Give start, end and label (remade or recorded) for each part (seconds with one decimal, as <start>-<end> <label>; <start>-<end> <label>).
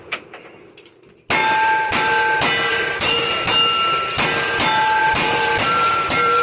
0.0-1.4 recorded; 1.4-2.1 remade; 2.1-2.7 recorded; 2.7-3.3 remade; 3.3-5.0 recorded; 5.0-6.4 remade